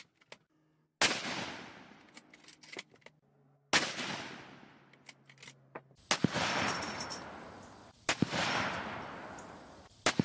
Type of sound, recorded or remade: recorded